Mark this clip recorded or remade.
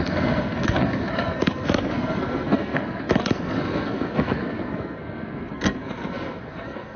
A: remade